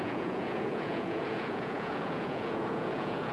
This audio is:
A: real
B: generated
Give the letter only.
B